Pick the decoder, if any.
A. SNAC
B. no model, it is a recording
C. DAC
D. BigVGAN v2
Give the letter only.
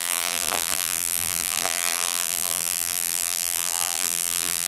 D